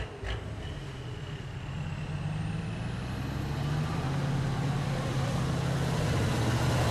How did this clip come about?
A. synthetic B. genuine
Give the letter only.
B